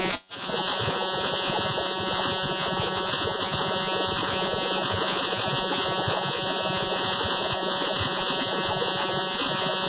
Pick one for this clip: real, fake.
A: fake